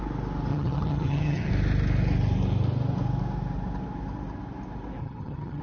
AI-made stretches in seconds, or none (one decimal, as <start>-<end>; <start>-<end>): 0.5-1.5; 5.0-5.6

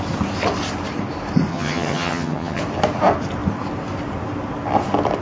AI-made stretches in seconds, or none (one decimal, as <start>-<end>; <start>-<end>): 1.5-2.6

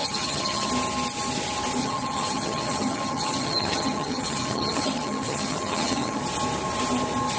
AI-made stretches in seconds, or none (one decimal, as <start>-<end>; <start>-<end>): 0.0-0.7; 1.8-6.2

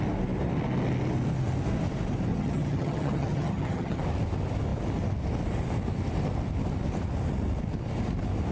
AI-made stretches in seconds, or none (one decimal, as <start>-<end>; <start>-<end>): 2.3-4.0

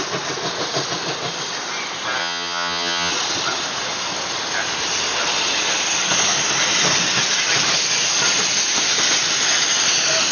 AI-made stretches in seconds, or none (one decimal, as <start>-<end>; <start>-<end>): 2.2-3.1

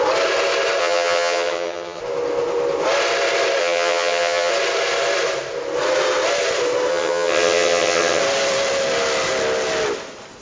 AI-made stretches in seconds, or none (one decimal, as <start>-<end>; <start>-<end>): 0.8-2.0; 3.6-4.5; 6.9-8.2